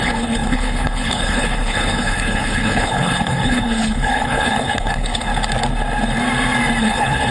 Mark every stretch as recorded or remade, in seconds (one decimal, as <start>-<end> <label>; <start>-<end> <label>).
0.0-5.3 remade; 5.3-6.8 recorded; 6.8-7.3 remade